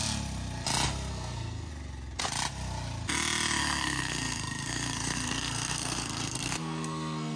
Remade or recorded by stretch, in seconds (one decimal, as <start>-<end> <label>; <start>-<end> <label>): 0.0-1.1 recorded; 1.1-1.7 remade; 1.7-3.6 recorded; 3.6-7.4 remade